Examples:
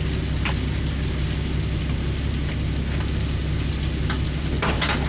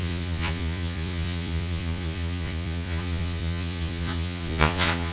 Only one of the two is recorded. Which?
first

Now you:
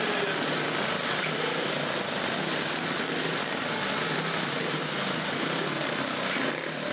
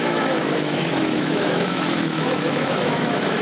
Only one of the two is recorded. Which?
first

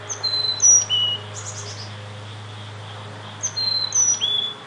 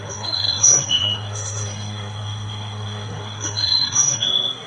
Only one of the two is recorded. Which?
first